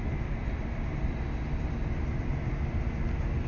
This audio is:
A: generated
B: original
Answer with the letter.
B